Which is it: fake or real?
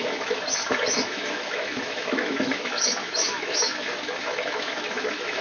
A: fake